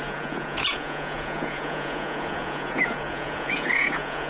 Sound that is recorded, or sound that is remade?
remade